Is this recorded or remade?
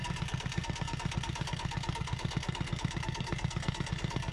remade